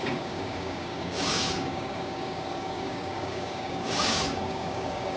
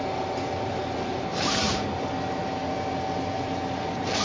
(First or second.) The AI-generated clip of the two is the first